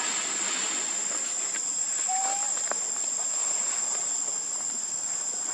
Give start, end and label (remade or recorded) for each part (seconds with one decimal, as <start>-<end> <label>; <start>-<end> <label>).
0.0-3.4 recorded; 3.4-4.2 remade; 4.2-5.5 recorded